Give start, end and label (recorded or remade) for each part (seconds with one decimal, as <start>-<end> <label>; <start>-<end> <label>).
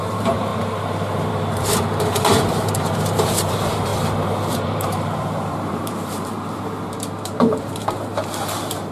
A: 0.0-0.5 remade; 0.5-1.3 recorded; 1.3-3.9 remade; 3.9-4.5 recorded; 4.5-8.9 remade